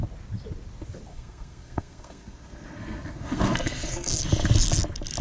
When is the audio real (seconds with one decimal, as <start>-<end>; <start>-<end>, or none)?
0.0-1.1; 4.2-5.2